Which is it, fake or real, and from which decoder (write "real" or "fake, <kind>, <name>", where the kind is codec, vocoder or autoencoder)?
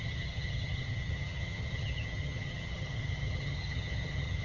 fake, vocoder, HiFi-GAN